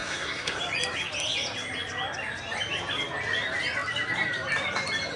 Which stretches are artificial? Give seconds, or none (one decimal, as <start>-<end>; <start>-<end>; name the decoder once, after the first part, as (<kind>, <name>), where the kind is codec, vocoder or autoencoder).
0.0-0.6 (codec, SNAC)

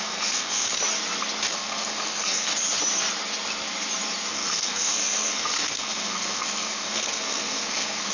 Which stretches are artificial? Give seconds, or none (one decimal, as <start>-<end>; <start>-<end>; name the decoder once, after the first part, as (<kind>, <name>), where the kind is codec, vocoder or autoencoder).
0.0-0.7 (codec, SNAC); 1.5-2.5; 4.3-8.1

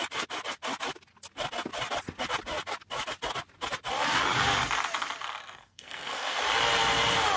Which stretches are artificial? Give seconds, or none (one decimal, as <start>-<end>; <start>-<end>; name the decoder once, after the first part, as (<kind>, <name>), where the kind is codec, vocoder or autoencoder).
5.4-6.4 (codec, SNAC)